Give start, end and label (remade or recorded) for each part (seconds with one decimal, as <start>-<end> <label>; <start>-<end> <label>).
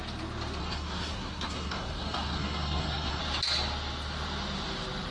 0.0-0.6 recorded; 0.6-3.2 remade; 3.2-5.1 recorded